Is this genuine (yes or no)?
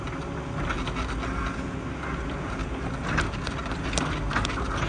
yes